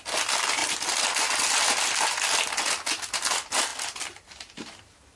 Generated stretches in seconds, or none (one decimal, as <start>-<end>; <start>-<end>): none